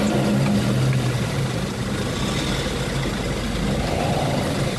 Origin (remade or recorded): recorded